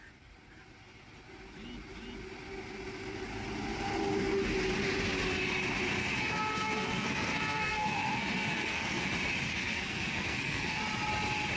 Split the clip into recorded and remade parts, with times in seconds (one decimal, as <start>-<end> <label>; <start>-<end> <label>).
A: 0.0-6.0 recorded; 6.0-9.1 remade; 9.1-9.5 recorded; 9.5-10.8 remade; 10.8-11.6 recorded